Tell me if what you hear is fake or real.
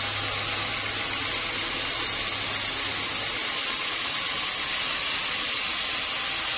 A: real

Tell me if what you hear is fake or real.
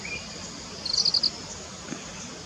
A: real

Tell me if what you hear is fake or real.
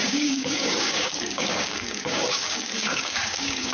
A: fake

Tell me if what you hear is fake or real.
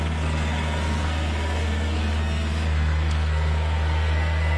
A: fake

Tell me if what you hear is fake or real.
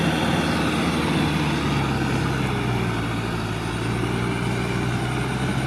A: real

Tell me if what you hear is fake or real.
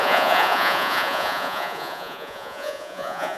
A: fake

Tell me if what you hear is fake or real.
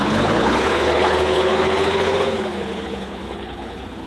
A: fake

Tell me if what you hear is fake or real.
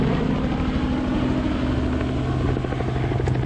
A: real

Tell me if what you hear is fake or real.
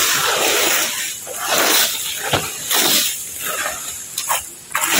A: real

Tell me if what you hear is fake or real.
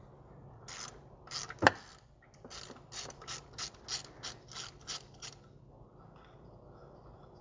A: real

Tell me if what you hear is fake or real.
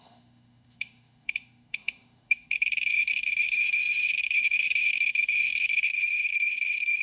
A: fake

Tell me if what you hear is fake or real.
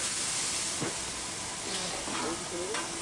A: real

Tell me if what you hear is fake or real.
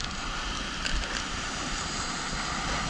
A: real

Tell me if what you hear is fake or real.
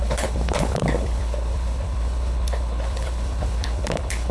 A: fake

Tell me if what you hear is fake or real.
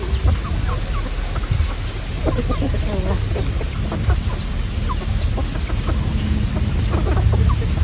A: real